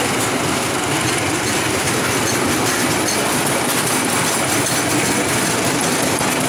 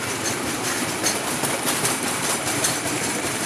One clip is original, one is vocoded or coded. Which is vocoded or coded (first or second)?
second